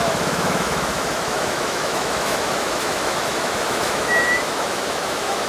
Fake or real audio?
fake